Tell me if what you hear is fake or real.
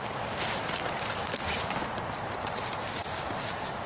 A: real